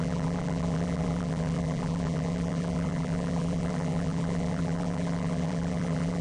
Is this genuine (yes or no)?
no